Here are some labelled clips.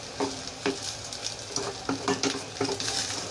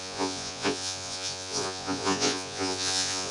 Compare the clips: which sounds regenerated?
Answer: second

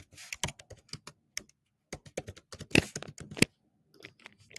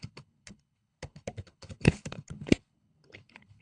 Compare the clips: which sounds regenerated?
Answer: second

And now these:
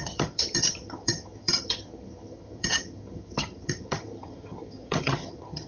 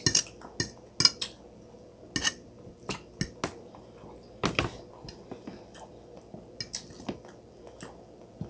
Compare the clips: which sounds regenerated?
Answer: first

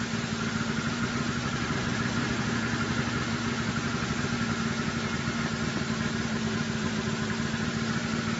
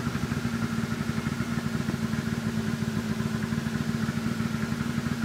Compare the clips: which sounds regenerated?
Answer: first